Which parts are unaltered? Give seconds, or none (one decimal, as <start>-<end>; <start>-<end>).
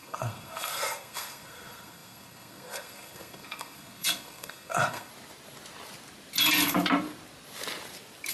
5.1-8.3